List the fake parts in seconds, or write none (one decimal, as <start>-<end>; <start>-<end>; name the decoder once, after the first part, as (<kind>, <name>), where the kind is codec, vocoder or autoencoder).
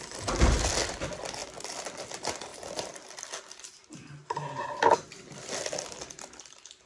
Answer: none